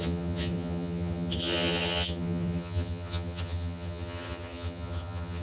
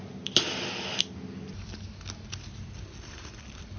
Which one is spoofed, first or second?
first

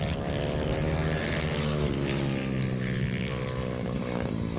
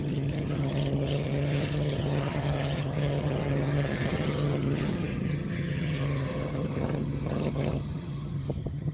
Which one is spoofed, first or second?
second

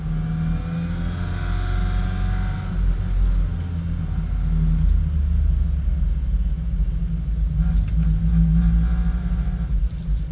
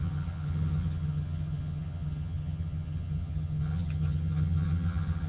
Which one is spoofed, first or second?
second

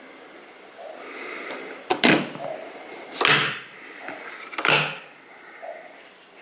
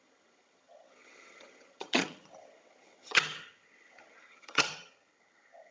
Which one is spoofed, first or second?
second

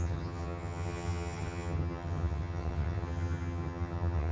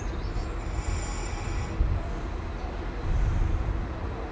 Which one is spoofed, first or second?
first